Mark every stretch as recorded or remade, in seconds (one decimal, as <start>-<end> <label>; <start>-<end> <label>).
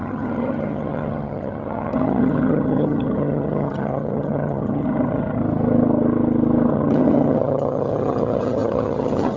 0.0-5.4 remade; 5.4-6.7 recorded; 6.7-9.4 remade